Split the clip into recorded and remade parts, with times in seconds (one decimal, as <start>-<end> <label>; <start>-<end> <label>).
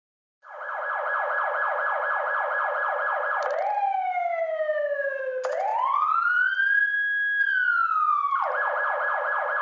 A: 0.0-0.8 remade; 0.8-5.7 recorded; 5.7-6.5 remade; 6.5-9.6 recorded